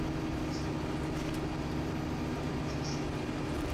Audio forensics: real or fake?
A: real